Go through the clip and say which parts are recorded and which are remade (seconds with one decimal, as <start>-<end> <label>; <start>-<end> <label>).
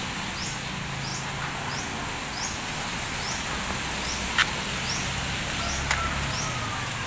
0.0-7.1 recorded